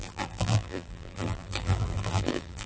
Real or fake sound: fake